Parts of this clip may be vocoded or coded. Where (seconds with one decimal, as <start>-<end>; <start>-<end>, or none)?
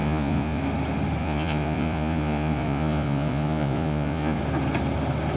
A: 0.0-0.6; 1.2-4.4